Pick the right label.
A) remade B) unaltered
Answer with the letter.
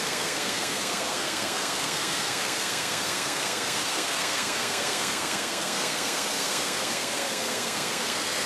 A